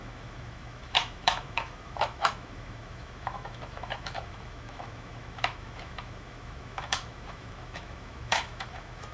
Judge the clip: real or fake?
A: fake